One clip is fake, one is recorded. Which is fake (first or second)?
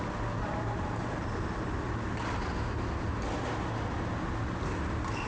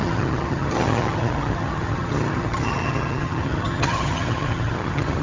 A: second